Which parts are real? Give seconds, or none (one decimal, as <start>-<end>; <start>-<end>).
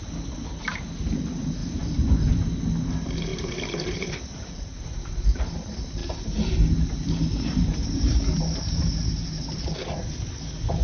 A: 0.0-1.6; 2.4-3.3; 5.4-10.8